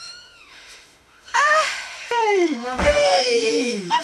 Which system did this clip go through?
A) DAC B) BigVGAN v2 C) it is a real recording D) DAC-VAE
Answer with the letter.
D